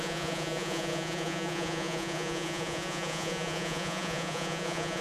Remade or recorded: remade